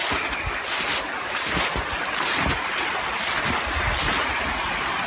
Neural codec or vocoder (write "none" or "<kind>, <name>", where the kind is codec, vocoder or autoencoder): none